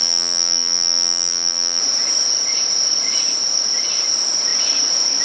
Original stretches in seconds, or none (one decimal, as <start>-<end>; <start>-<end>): 1.8-5.2